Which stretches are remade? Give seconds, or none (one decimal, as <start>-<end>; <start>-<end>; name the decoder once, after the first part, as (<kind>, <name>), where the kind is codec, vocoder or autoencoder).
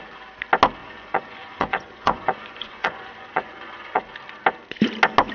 0.8-4.0 (vocoder, Vocos)